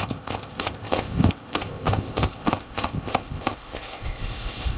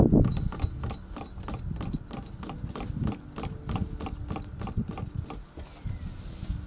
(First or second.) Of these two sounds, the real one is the second